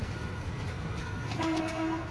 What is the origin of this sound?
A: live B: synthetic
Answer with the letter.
B